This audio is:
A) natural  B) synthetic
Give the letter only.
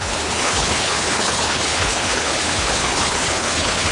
B